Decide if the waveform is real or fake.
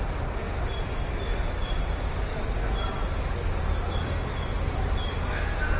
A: real